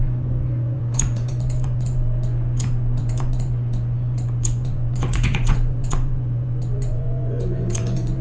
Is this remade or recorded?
remade